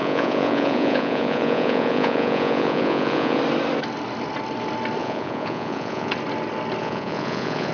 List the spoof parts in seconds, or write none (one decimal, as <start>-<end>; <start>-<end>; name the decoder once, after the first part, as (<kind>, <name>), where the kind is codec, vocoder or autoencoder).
0.0-3.4 (vocoder, Vocos); 5.0-6.1; 6.8-7.7